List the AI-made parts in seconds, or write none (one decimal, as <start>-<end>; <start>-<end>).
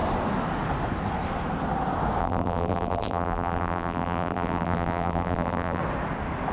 2.2-5.8